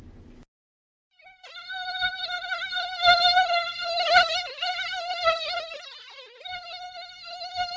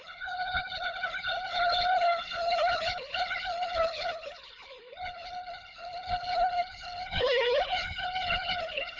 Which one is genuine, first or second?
first